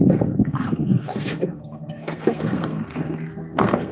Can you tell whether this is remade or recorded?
remade